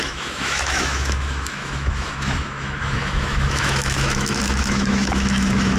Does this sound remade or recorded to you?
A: remade